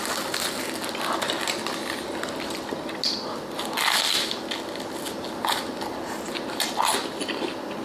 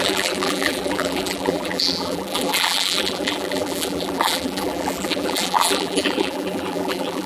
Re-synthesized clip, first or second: second